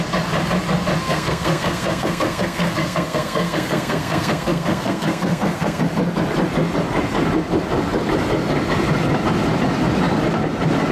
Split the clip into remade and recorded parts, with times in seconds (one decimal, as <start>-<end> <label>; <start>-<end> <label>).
0.0-1.0 recorded; 1.0-5.8 remade; 5.8-10.9 recorded

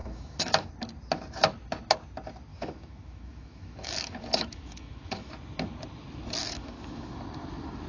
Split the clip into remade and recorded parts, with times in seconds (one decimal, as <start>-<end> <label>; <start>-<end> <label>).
0.0-0.7 remade; 0.7-2.5 recorded; 2.5-5.3 remade; 5.3-6.4 recorded; 6.4-7.1 remade; 7.1-7.9 recorded

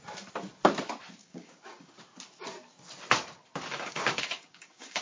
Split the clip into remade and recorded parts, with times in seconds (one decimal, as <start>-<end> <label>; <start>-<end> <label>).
0.0-1.2 recorded; 1.2-1.9 remade; 1.9-3.7 recorded; 3.7-5.0 remade

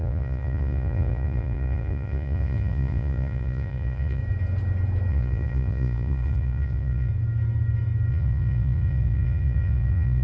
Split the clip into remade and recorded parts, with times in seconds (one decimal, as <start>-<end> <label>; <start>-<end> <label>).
0.0-4.2 remade; 4.2-5.1 recorded; 5.1-7.1 remade; 7.1-8.1 recorded; 8.1-10.2 remade

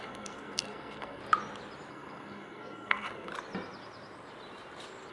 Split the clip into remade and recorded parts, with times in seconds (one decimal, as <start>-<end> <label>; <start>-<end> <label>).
0.0-1.2 remade; 1.2-1.9 recorded; 1.9-3.3 remade; 3.3-5.1 recorded